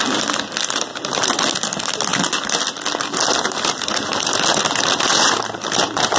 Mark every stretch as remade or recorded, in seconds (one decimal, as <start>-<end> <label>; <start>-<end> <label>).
0.0-6.2 recorded